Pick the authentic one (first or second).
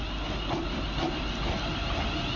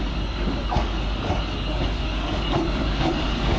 first